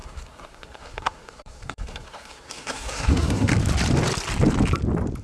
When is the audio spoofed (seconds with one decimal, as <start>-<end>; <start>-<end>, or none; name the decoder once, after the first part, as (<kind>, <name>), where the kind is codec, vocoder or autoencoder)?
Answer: 0.0-3.5 (codec, SNAC)